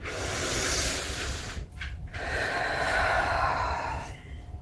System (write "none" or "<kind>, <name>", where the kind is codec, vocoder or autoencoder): vocoder, BigVGAN v2